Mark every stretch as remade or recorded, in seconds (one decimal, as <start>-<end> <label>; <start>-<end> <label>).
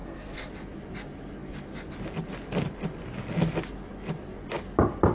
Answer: 0.0-0.5 remade; 0.5-5.1 recorded